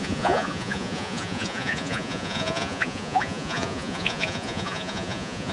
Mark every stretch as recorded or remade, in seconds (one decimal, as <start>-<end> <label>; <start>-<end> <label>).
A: 0.0-5.5 remade